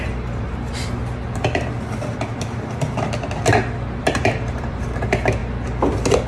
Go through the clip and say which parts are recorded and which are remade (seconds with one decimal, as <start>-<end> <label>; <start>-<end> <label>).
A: 0.0-1.0 remade; 1.0-4.0 recorded; 4.0-5.4 remade; 5.4-6.3 recorded